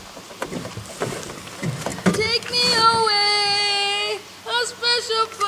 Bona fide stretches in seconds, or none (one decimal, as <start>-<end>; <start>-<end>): 0.0-5.5